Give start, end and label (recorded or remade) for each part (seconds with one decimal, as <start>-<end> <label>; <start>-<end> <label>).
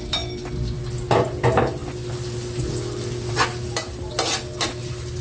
0.0-5.2 recorded